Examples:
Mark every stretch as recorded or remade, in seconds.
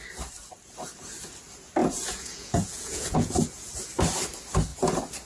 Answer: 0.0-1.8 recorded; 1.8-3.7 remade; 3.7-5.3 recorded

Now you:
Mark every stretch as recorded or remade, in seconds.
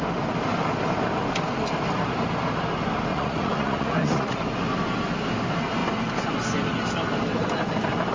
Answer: 0.0-3.1 recorded; 3.1-4.4 remade; 4.4-8.1 recorded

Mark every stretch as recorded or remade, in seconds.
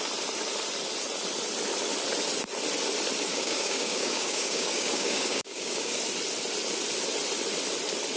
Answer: 0.0-3.3 recorded; 3.3-6.0 remade; 6.0-8.2 recorded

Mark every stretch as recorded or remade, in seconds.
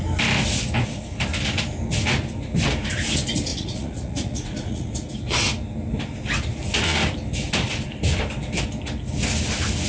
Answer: 0.0-3.5 recorded; 3.5-4.9 remade; 4.9-9.9 recorded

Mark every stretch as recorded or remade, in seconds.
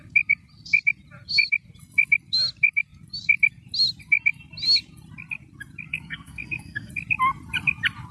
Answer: 0.0-5.9 recorded; 5.9-6.9 remade; 6.9-8.1 recorded